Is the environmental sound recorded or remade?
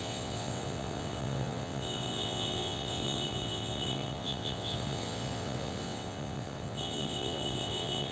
remade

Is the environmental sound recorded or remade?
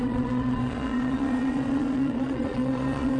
remade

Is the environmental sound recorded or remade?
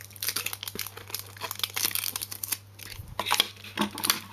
recorded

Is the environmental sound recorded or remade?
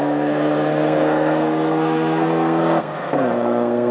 remade